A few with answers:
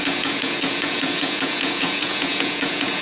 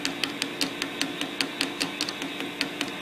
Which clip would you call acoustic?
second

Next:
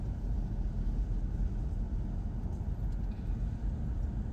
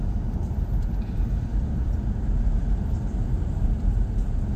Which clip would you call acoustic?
first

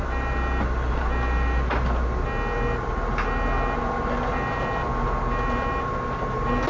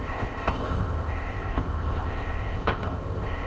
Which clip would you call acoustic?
first